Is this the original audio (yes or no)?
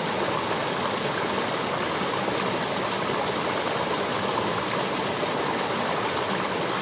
yes